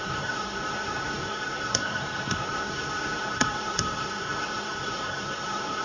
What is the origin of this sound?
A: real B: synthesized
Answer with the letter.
B